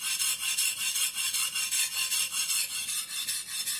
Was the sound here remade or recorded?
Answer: recorded